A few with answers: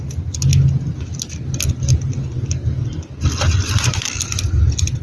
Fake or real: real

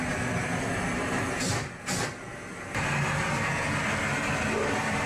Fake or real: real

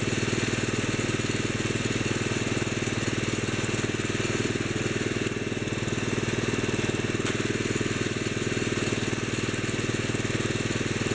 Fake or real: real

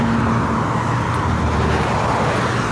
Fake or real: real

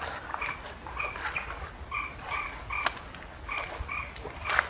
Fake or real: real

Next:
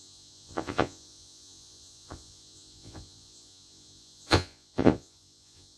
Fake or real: fake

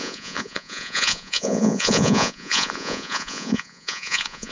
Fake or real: fake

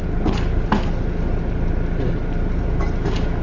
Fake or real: real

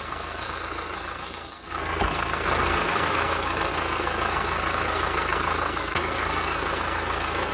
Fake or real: fake